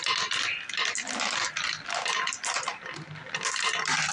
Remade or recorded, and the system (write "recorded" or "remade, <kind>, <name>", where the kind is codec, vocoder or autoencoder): recorded